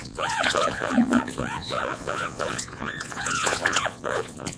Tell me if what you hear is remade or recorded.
remade